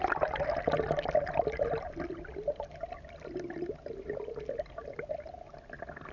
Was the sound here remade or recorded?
recorded